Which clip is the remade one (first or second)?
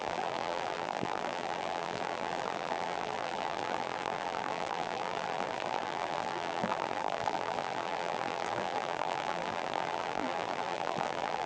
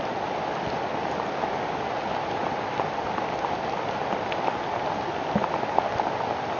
first